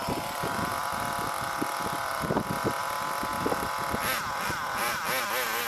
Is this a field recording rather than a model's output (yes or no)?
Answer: yes